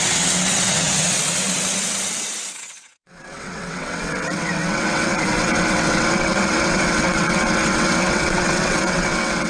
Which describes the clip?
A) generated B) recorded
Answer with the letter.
A